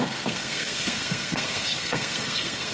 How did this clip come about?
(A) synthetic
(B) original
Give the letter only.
A